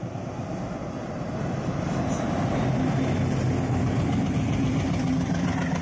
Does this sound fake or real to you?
real